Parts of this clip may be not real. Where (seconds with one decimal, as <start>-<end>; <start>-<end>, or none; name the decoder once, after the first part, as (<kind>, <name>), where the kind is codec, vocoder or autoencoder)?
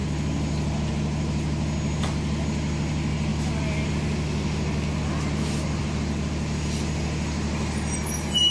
none